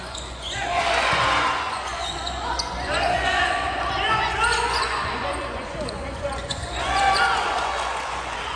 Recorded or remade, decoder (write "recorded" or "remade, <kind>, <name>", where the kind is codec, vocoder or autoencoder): remade, vocoder, Vocos